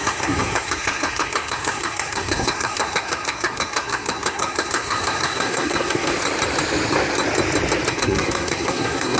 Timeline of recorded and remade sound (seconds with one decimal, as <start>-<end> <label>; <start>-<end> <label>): 0.0-6.1 remade; 6.1-7.9 recorded; 7.9-9.2 remade